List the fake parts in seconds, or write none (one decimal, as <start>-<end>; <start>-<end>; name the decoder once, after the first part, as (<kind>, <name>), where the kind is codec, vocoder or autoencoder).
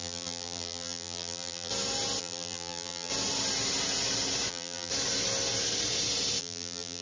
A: 0.0-1.7 (vocoder, BigVGAN v2); 2.2-3.1; 4.5-4.9; 6.4-7.0